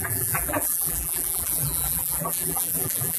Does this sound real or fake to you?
fake